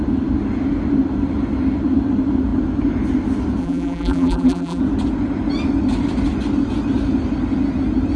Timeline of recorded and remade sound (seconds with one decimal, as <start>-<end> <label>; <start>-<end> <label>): 0.0-3.6 recorded; 3.6-4.8 remade; 4.8-8.2 recorded